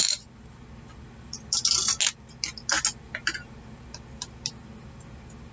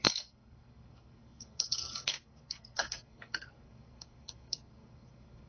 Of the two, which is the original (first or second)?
first